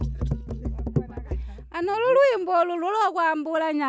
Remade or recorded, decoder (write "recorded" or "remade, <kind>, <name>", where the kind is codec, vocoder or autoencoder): recorded